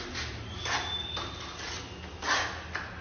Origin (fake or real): real